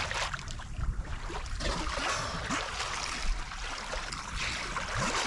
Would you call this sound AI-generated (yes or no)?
no